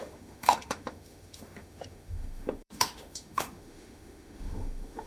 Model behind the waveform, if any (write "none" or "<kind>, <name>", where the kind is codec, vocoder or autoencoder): autoencoder, DAC-VAE